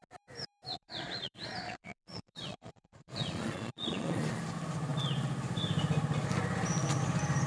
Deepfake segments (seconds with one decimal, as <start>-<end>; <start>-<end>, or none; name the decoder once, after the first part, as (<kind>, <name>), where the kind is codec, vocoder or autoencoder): 0.7-4.4 (vocoder, Vocos)